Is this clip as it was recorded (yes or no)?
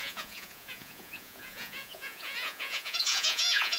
no